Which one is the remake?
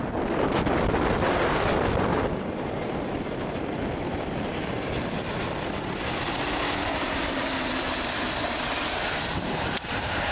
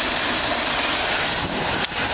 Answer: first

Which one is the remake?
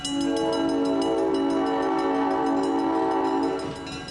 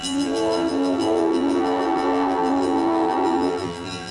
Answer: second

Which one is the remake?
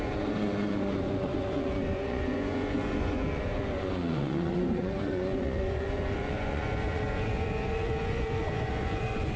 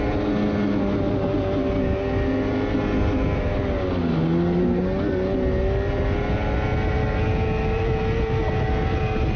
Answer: first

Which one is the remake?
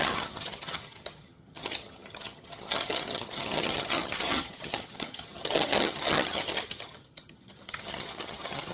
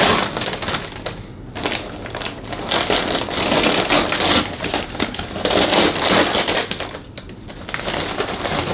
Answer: first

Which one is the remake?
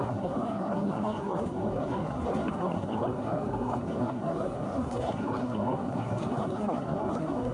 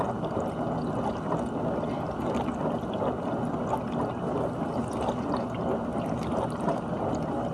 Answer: first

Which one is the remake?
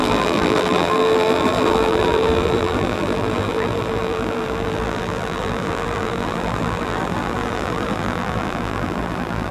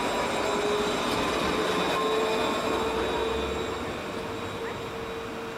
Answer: first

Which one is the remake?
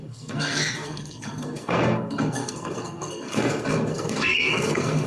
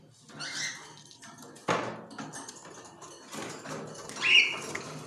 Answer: first